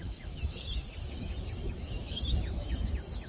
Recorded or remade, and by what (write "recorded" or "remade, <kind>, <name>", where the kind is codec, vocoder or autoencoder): remade, autoencoder, DAC-VAE